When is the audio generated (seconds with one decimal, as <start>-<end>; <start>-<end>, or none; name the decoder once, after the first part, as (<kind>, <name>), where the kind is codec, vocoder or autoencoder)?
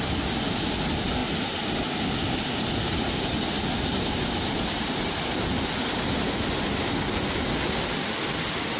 none